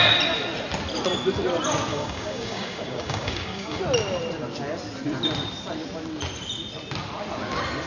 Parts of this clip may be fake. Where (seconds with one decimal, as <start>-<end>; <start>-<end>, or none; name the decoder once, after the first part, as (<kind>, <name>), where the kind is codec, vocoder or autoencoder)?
1.9-3.8 (codec, DAC)